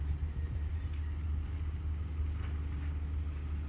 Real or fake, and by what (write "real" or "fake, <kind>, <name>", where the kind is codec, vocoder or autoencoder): real